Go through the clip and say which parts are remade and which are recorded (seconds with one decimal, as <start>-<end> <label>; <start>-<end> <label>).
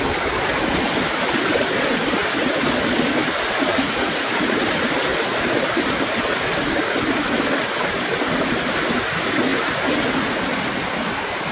0.0-3.7 recorded; 3.7-4.6 remade; 4.6-11.5 recorded